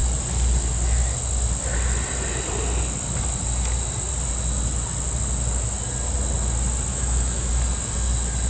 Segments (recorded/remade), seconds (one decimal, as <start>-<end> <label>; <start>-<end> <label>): 0.0-6.9 recorded; 6.9-7.5 remade; 7.5-8.5 recorded